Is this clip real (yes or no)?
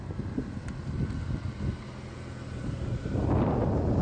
yes